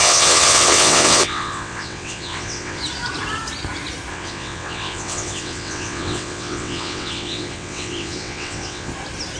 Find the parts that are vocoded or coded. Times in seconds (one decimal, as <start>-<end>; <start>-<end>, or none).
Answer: 0.0-2.8; 4.1-8.9